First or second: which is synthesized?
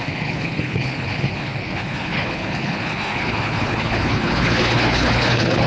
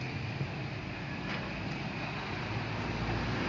first